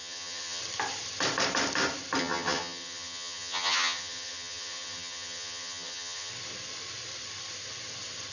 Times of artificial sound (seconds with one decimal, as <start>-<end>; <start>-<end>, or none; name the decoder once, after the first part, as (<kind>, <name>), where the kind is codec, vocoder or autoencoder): 0.0-0.6 (vocoder, HiFi-GAN); 2.2-6.3